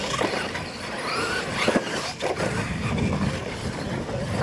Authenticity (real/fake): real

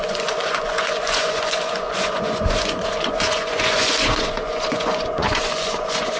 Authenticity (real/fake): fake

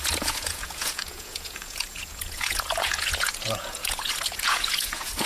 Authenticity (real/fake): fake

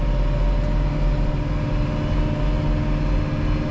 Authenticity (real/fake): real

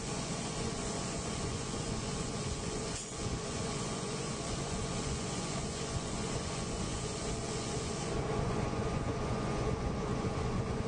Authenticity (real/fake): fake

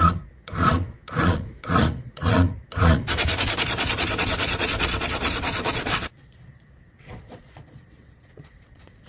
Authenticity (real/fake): fake